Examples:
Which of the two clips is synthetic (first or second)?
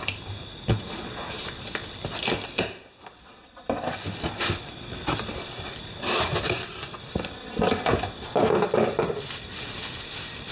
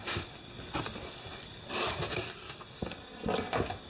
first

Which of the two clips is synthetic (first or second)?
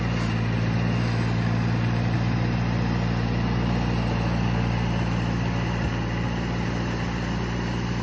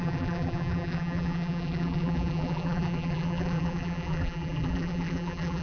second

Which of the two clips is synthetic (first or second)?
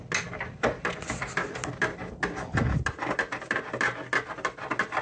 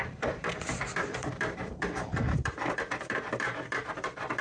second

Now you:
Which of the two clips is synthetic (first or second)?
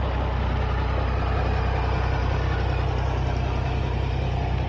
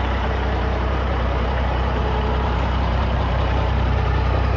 second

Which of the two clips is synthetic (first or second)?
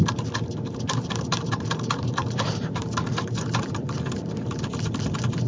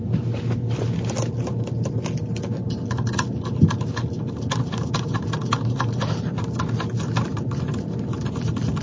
first